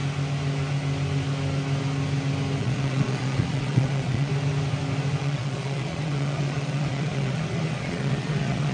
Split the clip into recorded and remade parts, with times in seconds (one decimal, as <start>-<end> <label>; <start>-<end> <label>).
0.0-2.6 recorded; 2.6-4.3 remade; 4.3-5.2 recorded; 5.2-8.7 remade